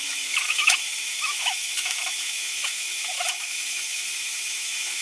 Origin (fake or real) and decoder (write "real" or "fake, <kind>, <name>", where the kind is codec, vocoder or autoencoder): fake, autoencoder, DAC-VAE